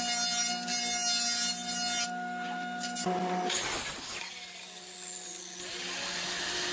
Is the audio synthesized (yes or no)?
no